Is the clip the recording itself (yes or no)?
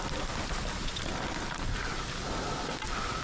yes